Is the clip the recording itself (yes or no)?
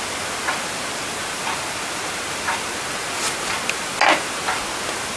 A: yes